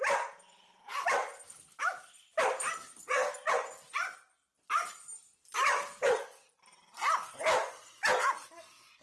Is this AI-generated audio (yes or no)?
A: no